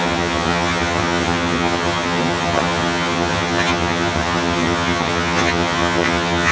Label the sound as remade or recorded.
remade